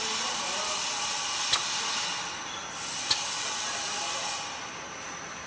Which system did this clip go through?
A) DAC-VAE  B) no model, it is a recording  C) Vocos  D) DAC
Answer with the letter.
B